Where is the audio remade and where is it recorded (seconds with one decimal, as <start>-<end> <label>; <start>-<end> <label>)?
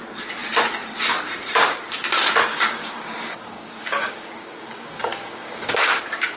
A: 0.0-2.5 recorded; 2.5-6.0 remade; 6.0-6.4 recorded